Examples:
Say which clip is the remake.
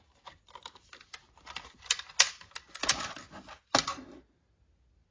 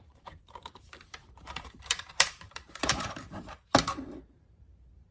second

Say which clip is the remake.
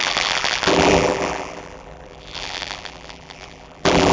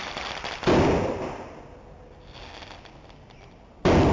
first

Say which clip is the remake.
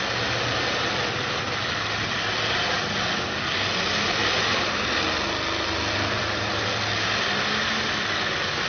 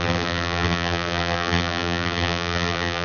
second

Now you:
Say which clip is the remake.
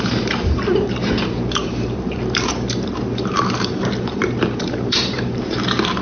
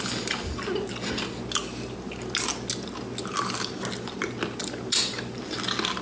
first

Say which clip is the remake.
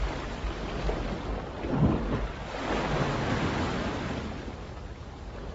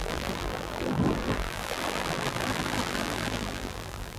second